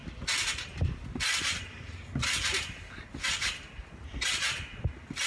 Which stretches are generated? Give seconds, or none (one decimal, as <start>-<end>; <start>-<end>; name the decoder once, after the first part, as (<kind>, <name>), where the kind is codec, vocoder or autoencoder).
none